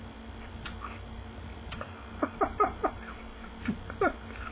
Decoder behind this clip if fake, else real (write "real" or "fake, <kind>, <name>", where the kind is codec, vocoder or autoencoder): real